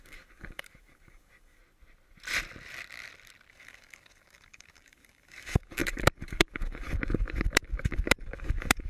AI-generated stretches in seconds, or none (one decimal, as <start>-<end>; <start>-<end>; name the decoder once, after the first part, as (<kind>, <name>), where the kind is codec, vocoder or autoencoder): 0.0-1.6 (codec, DAC); 3.5-8.9